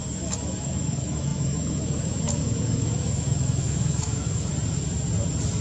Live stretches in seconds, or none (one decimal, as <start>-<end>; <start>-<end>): 4.5-5.6